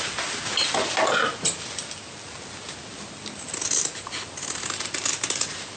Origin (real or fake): real